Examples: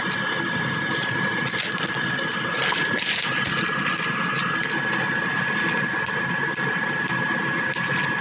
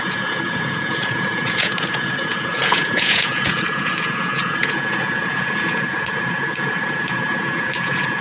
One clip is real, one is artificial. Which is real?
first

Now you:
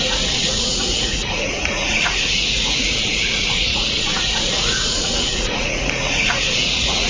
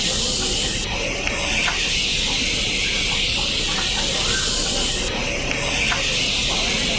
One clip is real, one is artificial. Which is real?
second